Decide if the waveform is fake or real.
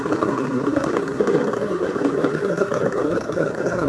fake